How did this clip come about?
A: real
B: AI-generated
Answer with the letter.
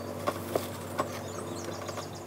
A